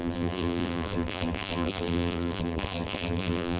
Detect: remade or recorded remade